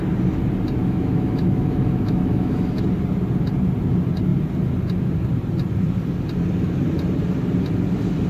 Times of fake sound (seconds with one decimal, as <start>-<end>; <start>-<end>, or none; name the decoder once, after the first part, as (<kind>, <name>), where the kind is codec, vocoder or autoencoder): 0.8-2.9 (autoencoder, DAC-VAE)